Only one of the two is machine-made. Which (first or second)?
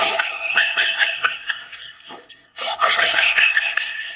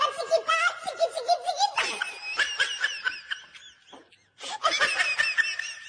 first